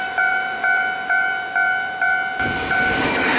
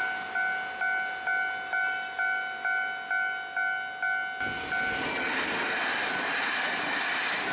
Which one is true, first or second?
second